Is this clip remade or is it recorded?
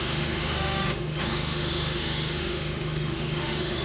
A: remade